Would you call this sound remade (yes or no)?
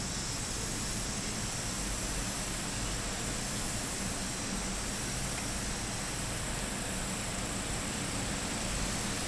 no